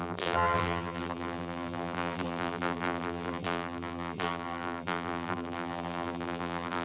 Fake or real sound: fake